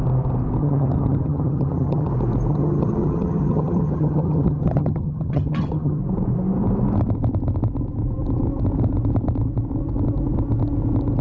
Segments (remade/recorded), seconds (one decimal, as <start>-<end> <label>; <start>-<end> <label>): 0.0-0.6 recorded; 0.6-2.1 remade; 2.1-2.5 recorded; 2.5-6.0 remade; 6.0-11.2 recorded